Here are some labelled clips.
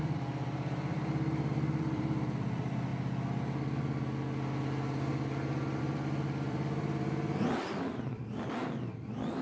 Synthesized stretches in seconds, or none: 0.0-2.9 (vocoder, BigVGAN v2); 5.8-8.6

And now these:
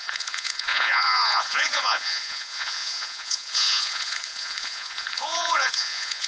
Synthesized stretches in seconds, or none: 0.0-6.3 (vocoder, Vocos)

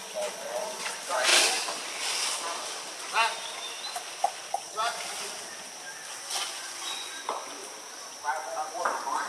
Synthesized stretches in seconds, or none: 0.0-1.3 (vocoder, Vocos); 6.3-7.6

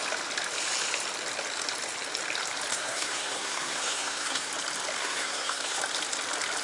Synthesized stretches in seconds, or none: 2.7-4.5 (codec, SNAC); 5.0-5.8

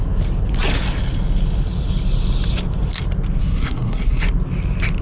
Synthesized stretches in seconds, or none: 3.4-4.3 (codec, SNAC)

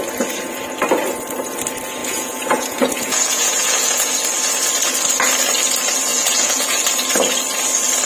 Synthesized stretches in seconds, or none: 2.0-4.1 (vocoder, Vocos); 6.1-6.8

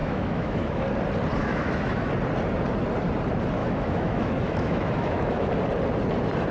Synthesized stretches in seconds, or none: 0.0-0.8 (autoencoder, DAC-VAE); 1.4-2.1; 3.6-5.5